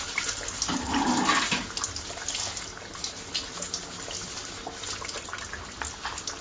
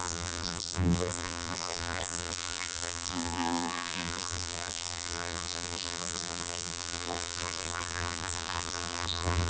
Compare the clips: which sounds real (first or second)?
first